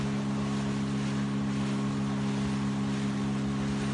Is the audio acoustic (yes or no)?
yes